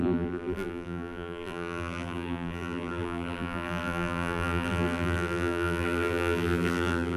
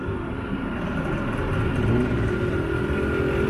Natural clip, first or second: second